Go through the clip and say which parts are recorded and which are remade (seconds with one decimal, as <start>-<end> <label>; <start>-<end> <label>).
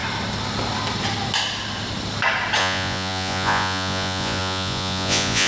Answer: 0.0-2.6 recorded; 2.6-5.5 remade